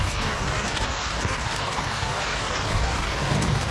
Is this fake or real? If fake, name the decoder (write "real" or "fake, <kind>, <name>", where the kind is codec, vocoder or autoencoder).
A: fake, codec, DAC